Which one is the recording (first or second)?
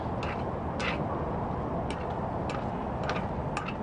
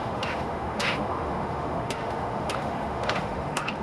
first